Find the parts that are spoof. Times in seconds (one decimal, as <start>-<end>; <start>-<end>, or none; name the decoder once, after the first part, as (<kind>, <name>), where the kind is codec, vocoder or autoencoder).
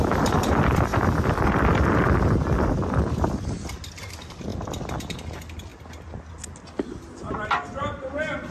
0.0-0.9 (vocoder, BigVGAN v2); 4.1-5.7; 7.0-8.5